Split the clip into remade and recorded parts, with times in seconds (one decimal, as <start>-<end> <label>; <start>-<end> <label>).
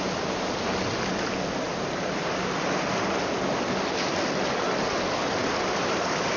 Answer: 0.0-6.4 recorded